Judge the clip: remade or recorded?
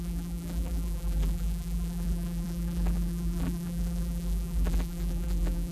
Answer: remade